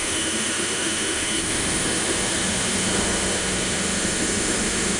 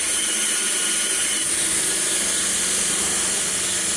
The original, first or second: second